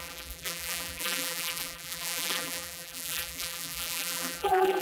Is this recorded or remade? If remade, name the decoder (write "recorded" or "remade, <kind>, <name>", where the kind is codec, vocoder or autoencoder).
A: remade, vocoder, BigVGAN v2